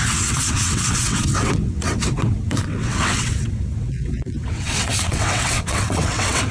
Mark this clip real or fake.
fake